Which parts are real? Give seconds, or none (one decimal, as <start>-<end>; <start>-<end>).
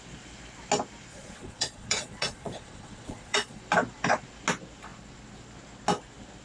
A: 0.0-1.1; 3.6-6.4